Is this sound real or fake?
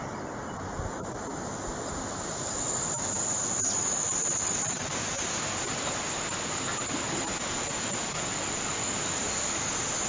real